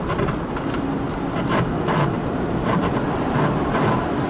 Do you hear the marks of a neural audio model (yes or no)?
no